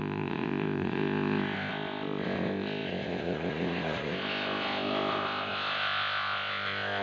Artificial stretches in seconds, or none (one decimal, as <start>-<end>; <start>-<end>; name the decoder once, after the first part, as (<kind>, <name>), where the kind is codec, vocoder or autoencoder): 0.0-7.0 (codec, ZipCodec)

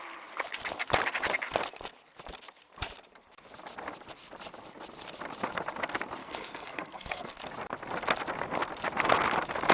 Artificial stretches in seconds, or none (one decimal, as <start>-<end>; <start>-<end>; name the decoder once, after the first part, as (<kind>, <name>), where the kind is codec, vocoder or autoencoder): 6.2-7.3 (codec, SNAC)

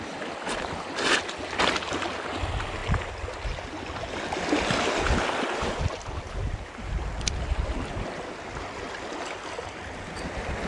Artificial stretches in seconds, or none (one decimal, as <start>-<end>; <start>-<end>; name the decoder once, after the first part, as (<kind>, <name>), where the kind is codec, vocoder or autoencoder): none

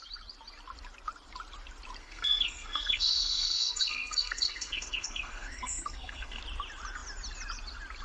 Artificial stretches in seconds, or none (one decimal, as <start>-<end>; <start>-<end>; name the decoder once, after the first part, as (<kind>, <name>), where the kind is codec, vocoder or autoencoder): 2.0-6.4 (codec, SNAC)